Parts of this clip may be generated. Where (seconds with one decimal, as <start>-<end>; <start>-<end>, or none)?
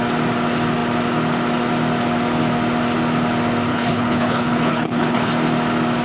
3.7-5.3